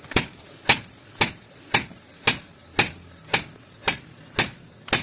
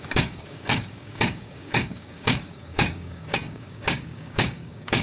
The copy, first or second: second